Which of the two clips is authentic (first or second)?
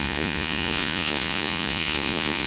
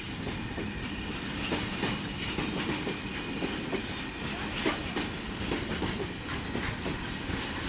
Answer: second